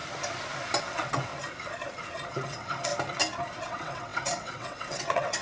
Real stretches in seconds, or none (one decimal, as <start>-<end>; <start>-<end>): 0.0-0.8; 1.3-2.3; 2.9-3.6